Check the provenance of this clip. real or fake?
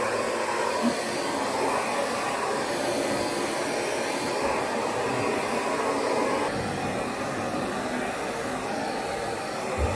real